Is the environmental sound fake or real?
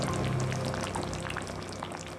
real